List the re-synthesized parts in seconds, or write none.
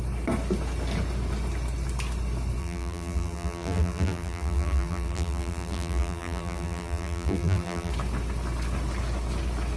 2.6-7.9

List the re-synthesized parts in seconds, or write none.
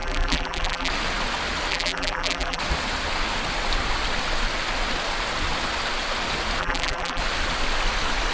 0.0-0.9; 1.7-2.6; 6.6-7.2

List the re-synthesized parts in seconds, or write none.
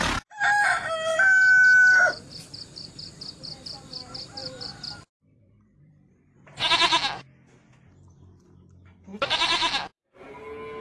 4.4-6.7; 9.1-10.4